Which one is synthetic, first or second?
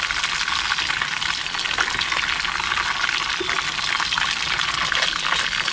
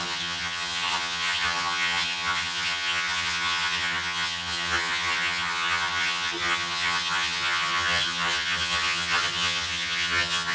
second